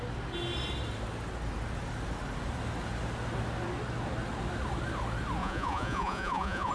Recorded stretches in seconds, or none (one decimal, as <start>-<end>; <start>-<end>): 0.0-5.4